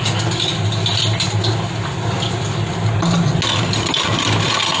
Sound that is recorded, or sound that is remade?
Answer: recorded